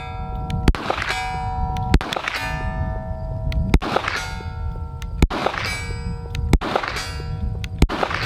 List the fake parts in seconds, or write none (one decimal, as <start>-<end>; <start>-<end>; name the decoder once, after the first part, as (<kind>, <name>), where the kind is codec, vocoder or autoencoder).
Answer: none